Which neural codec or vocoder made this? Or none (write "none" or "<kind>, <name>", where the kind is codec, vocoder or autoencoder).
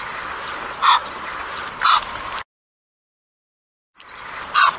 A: none